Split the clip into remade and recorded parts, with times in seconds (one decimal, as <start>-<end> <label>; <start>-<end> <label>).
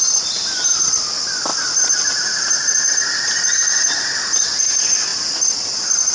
0.0-6.1 recorded